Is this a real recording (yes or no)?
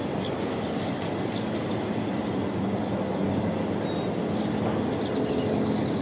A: yes